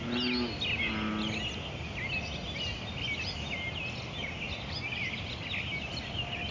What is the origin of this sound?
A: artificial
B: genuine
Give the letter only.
B